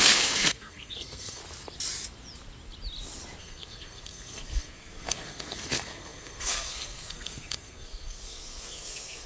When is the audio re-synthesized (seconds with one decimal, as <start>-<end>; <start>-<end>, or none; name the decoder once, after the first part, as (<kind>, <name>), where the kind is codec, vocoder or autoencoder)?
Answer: 0.0-1.4 (codec, SNAC); 3.4-9.3